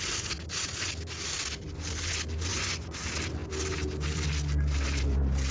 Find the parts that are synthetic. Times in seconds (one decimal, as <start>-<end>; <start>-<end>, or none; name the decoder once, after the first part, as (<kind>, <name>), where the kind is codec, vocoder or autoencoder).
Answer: 2.5-3.0 (vocoder, Vocos)